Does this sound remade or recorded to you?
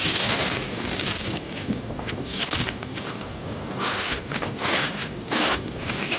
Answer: remade